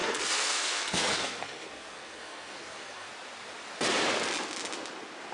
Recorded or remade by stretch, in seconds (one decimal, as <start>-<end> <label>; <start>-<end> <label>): 0.0-3.1 remade; 3.1-5.3 recorded